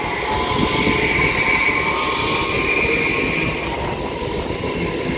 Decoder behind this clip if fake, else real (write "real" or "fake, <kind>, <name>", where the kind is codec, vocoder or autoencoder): real